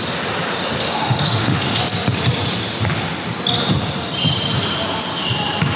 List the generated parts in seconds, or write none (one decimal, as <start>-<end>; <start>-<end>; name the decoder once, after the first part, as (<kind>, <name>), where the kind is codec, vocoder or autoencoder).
0.8-1.8 (autoencoder, DAC-VAE)